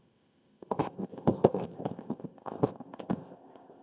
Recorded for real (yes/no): no